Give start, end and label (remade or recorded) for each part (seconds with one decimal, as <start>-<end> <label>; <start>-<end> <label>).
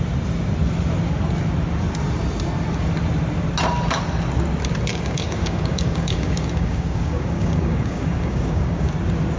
0.0-4.9 recorded; 4.9-8.9 remade; 8.9-9.4 recorded